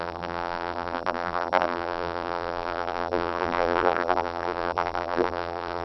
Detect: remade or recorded remade